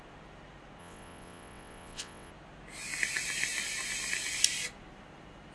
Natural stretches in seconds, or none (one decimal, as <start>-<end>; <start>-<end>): 0.0-0.8; 2.3-5.5